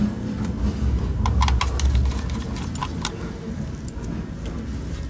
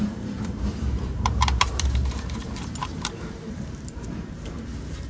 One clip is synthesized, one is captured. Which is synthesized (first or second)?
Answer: second